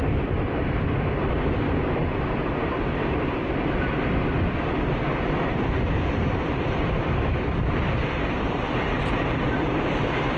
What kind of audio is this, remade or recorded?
remade